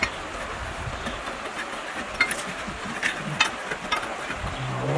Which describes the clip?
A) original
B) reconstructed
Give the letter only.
A